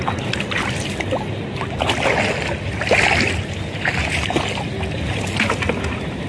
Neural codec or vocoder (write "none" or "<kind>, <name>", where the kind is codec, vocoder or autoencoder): none